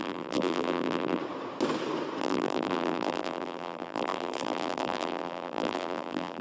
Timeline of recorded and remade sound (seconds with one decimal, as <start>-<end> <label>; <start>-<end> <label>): 0.0-1.2 remade; 1.2-2.2 recorded; 2.2-6.4 remade